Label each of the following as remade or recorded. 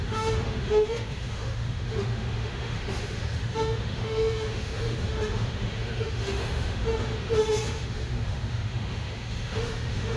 remade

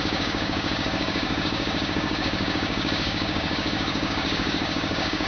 remade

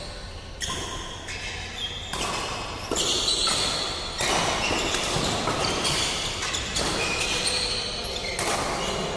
recorded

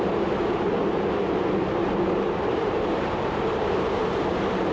remade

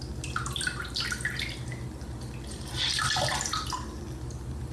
recorded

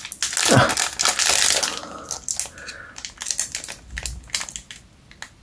recorded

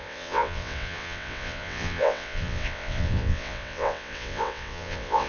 remade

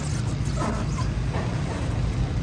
recorded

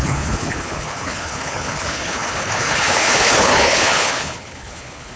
remade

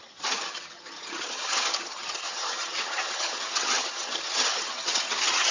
remade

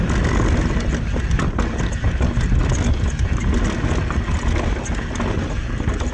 recorded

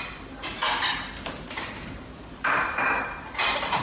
remade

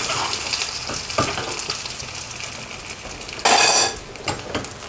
recorded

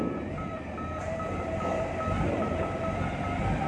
remade